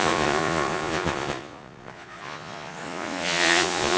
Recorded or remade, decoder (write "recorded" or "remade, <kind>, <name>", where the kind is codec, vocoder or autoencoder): remade, vocoder, Vocos